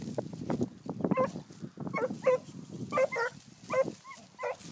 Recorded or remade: recorded